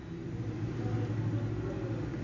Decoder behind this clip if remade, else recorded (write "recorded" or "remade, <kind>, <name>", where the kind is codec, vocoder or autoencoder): recorded